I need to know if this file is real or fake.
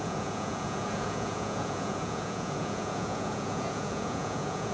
fake